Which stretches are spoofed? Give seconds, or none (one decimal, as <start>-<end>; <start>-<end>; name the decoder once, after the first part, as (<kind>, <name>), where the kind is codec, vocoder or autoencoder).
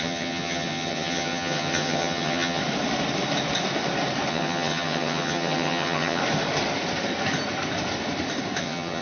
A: 0.0-2.6 (vocoder, HiFi-GAN); 4.3-6.2; 8.6-9.0